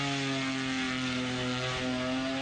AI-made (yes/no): no